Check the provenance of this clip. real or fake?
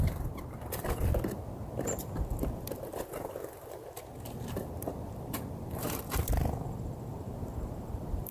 fake